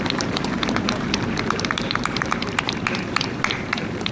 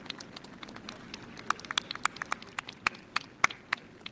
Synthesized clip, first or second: first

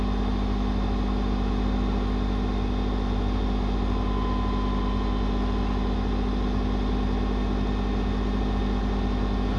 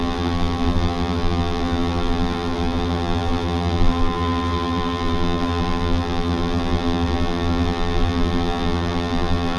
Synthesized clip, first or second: second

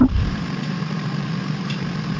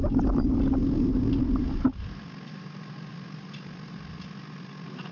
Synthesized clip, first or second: first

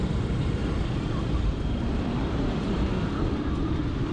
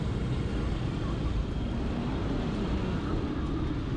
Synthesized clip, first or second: first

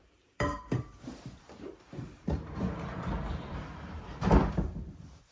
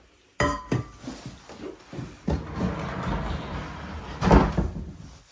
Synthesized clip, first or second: first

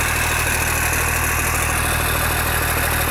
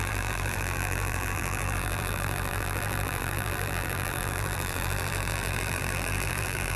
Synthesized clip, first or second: second